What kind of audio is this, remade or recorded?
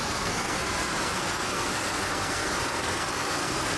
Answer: remade